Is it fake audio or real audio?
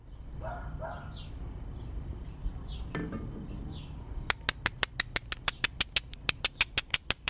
real